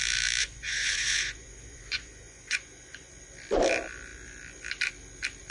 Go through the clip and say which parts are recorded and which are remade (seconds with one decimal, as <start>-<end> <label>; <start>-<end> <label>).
0.0-0.4 recorded; 0.4-3.1 remade; 3.1-5.5 recorded